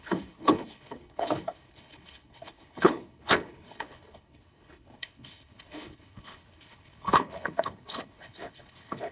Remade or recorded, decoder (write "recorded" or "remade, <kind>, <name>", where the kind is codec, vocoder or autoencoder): remade, codec, HILCodec